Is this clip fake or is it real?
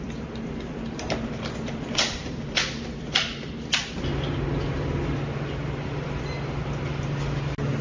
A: real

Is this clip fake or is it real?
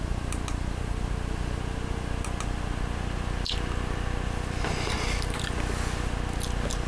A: real